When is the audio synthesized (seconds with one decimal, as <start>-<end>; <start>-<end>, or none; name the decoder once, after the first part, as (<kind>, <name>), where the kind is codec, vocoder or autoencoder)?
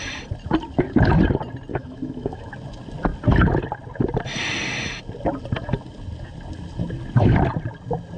1.7-2.5 (autoencoder, DAC-VAE)